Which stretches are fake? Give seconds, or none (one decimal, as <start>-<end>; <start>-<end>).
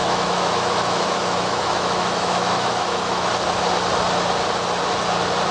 0.0-3.3